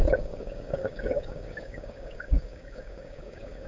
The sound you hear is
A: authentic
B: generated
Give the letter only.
B